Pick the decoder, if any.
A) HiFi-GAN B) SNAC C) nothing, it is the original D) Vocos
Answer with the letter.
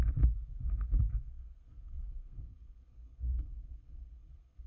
B